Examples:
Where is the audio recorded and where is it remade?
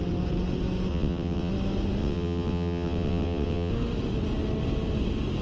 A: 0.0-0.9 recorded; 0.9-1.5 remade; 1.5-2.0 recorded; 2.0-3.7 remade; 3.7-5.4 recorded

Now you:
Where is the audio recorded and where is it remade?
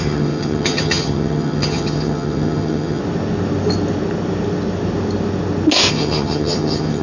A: 0.0-3.0 remade; 3.0-5.9 recorded; 5.9-7.0 remade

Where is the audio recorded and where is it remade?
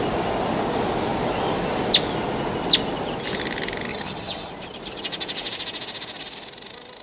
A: 0.0-3.9 recorded; 3.9-4.5 remade; 4.5-7.0 recorded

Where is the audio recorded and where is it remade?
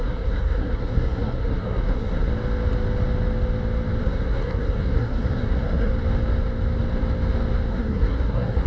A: 0.0-2.3 remade; 2.3-4.0 recorded; 4.0-5.9 remade; 5.9-7.7 recorded; 7.7-8.7 remade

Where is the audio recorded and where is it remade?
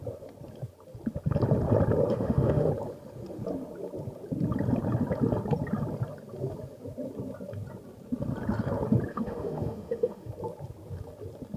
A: 0.0-2.1 recorded; 2.1-2.7 remade; 2.7-9.1 recorded; 9.1-10.3 remade; 10.3-11.6 recorded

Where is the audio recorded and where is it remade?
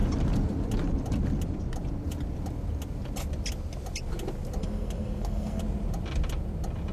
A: 0.0-4.6 recorded; 4.6-5.6 remade; 5.6-6.9 recorded